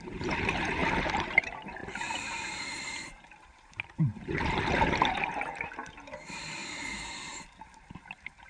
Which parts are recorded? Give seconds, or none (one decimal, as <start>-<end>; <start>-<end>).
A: 4.1-4.8; 6.6-8.1